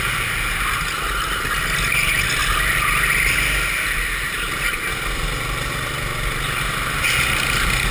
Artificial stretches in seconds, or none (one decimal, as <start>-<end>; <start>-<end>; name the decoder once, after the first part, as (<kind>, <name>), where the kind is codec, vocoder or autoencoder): none